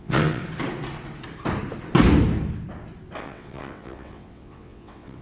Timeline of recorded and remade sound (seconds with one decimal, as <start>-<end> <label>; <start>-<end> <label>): 0.0-0.4 remade; 0.4-3.2 recorded; 3.2-5.2 remade